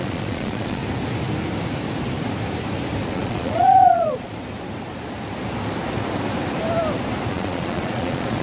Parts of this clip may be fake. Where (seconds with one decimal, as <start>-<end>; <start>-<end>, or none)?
0.0-0.8; 3.1-4.3; 7.3-8.4